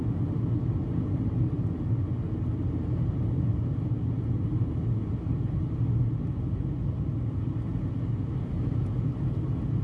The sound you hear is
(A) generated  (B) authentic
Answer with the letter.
B